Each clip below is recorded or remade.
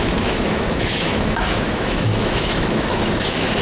remade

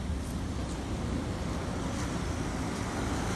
recorded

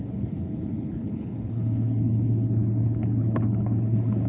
remade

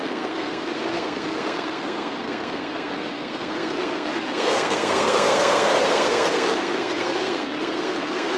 remade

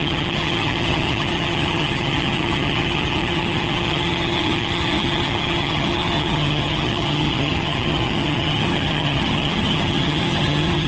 remade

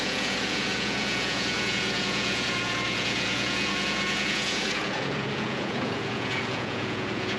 remade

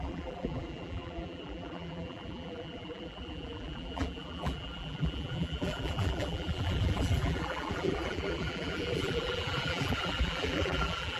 remade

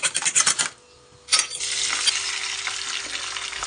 recorded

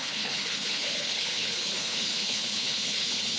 remade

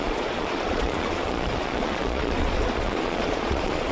remade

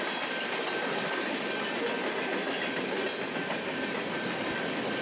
recorded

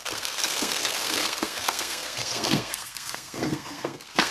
remade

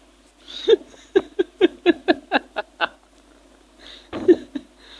recorded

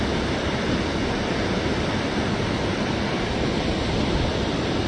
recorded